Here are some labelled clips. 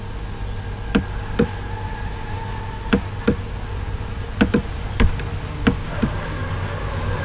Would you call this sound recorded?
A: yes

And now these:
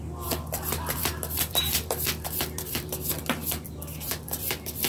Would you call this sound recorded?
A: no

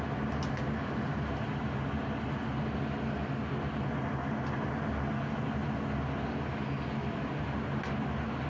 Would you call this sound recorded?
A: yes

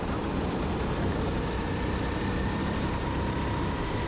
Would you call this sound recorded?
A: no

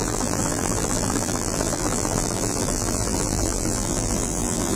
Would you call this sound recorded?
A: no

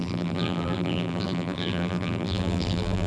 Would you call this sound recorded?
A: no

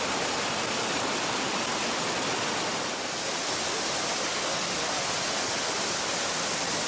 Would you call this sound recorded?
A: yes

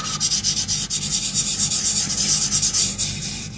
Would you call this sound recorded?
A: yes